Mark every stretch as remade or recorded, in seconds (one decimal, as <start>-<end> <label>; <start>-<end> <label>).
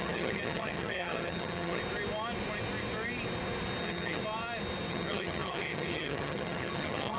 0.0-1.8 remade; 1.8-3.8 recorded; 3.8-4.2 remade; 4.2-4.9 recorded; 4.9-7.2 remade